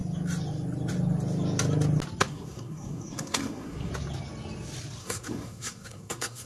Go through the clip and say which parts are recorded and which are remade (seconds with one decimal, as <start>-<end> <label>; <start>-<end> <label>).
0.0-2.3 recorded; 2.3-3.9 remade; 3.9-5.0 recorded; 5.0-6.5 remade